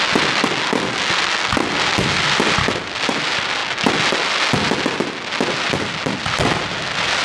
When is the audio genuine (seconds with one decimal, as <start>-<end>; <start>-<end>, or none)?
0.0-7.2